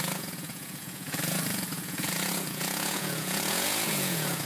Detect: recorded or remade remade